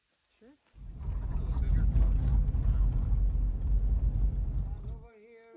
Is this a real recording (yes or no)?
yes